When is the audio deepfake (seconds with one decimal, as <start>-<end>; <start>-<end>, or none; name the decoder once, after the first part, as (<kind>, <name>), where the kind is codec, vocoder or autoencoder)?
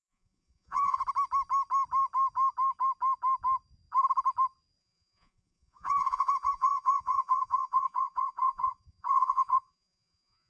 0.0-1.0 (vocoder, Vocos); 4.8-10.5